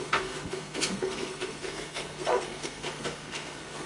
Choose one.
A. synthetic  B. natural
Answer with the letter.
A